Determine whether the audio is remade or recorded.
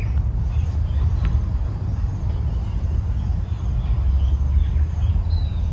recorded